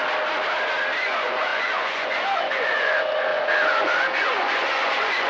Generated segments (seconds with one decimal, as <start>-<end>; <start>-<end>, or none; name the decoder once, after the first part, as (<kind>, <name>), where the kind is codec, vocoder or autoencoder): 1.0-5.3 (vocoder, Vocos)